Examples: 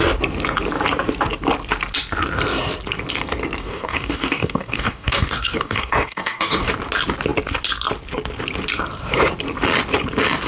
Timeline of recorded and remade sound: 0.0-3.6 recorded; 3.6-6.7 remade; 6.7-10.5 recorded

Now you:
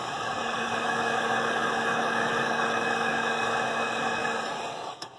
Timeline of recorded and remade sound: 0.0-4.2 remade; 4.2-4.7 recorded; 4.7-5.2 remade

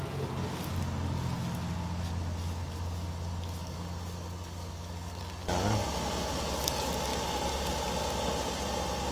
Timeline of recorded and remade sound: 0.0-3.6 recorded; 3.6-5.2 remade; 5.2-9.1 recorded

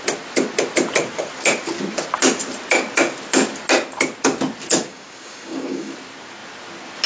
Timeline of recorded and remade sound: 0.0-4.9 recorded; 4.9-5.9 remade; 5.9-7.1 recorded

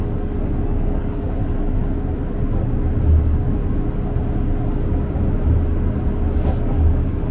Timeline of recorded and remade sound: 0.0-1.4 remade; 1.4-3.0 recorded; 3.0-3.6 remade; 3.6-6.6 recorded; 6.6-7.3 remade

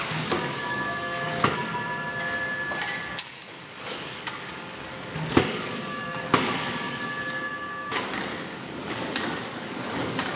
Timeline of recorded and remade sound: 0.0-1.7 remade; 1.7-3.1 recorded; 3.1-10.4 remade

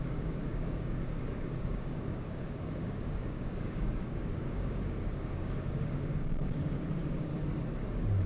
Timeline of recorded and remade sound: 0.0-7.3 remade; 7.3-7.9 recorded; 7.9-8.3 remade

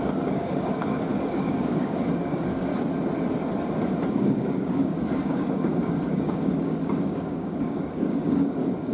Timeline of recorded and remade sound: 0.0-2.7 remade; 2.7-4.1 recorded; 4.1-8.9 remade